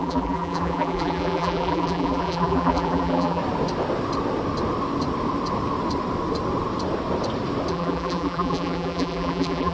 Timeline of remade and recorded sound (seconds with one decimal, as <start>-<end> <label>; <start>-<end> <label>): 0.0-3.4 remade; 3.4-7.7 recorded; 7.7-9.7 remade